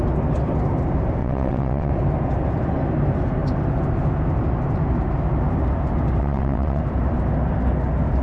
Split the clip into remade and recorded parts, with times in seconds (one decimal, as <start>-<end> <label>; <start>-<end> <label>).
0.0-1.2 recorded; 1.2-1.9 remade; 1.9-6.2 recorded; 6.2-6.8 remade; 6.8-8.2 recorded